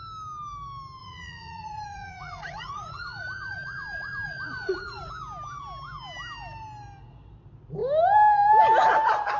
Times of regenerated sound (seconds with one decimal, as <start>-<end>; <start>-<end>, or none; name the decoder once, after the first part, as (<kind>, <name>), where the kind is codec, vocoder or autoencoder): 1.0-5.1 (vocoder, Vocos)